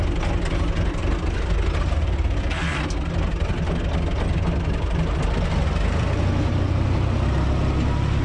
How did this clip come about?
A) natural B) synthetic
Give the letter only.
A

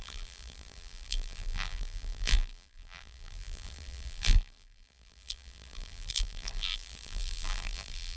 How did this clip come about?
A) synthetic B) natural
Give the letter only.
A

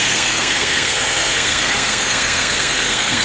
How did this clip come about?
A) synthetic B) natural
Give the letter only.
A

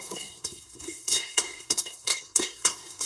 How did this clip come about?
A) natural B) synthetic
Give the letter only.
B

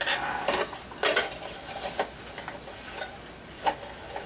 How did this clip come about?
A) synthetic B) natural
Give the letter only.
B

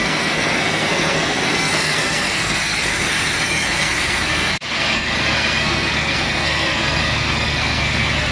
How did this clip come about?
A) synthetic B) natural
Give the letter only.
A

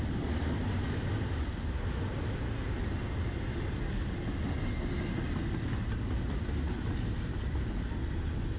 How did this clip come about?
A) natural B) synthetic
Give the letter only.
A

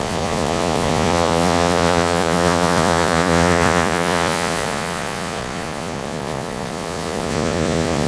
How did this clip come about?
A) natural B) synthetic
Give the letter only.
B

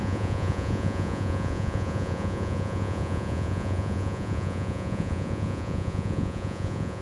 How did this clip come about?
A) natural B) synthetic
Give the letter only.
B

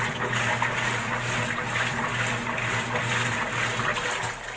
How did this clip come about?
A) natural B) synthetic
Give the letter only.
A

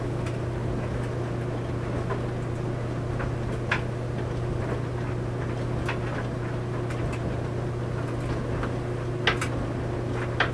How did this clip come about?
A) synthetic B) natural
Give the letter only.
B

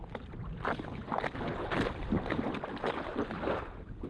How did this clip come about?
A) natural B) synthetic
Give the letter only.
A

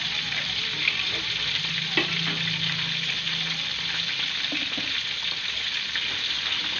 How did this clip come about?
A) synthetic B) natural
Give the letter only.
B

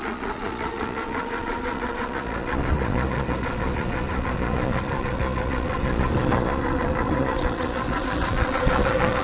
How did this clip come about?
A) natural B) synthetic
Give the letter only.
B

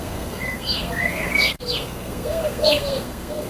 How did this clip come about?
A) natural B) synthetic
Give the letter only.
B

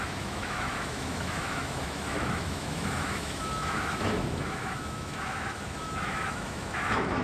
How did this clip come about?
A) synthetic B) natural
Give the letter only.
A